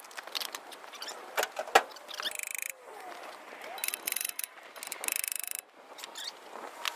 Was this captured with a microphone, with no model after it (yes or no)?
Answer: yes